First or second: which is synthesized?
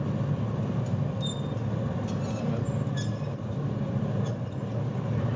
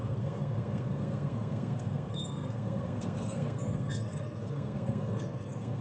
second